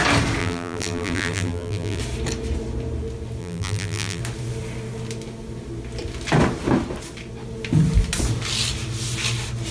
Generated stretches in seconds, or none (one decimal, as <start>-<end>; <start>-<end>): 0.4-2.0; 3.4-4.2